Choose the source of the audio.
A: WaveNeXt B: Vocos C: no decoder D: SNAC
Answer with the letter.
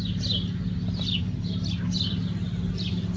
C